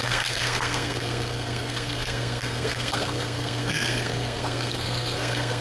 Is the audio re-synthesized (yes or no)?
yes